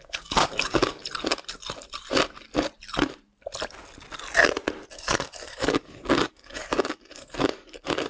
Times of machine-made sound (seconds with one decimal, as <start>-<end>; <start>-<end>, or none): 0.0-1.0; 4.9-8.1